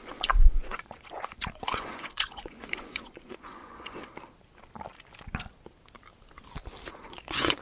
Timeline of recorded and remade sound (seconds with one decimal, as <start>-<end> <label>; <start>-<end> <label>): 0.0-4.0 remade; 4.0-6.9 recorded; 6.9-7.6 remade